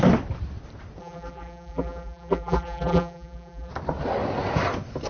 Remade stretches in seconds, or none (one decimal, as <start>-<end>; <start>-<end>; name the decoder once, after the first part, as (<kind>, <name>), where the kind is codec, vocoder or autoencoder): 1.0-3.7 (vocoder, BigVGAN v2)